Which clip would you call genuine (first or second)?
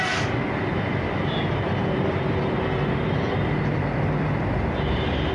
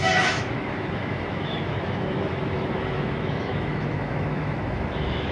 first